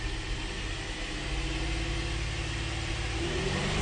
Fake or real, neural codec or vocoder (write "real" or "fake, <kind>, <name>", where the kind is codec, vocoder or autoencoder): real